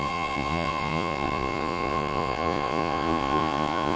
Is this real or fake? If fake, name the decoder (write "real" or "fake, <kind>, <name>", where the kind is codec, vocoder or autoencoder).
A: fake, vocoder, Vocos